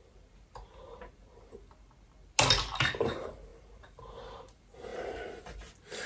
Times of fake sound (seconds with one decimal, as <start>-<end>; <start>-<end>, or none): 3.5-4.4; 4.9-5.5